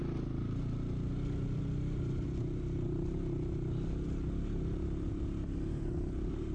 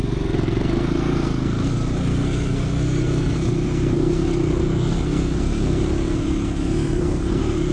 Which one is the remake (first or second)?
second